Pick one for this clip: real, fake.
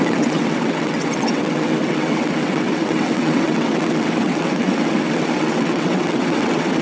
fake